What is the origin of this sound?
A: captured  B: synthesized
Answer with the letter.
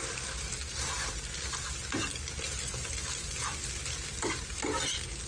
A